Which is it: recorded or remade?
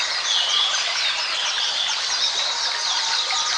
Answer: recorded